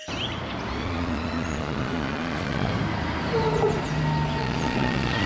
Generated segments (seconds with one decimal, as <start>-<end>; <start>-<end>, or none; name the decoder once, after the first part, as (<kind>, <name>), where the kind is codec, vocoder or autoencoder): 0.8-2.7 (vocoder, Vocos); 4.4-5.3